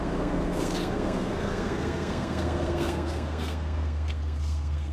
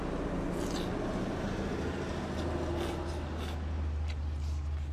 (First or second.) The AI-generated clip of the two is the first